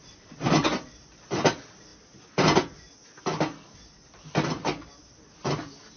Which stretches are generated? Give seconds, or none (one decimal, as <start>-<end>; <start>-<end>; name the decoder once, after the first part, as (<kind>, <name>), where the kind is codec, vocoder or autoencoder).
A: none